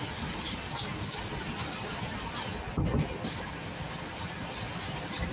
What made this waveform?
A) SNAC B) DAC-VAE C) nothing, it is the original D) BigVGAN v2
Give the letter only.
C